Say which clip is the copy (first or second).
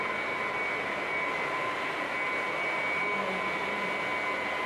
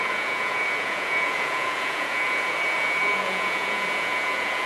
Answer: second